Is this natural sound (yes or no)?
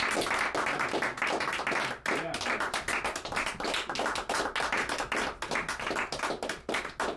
yes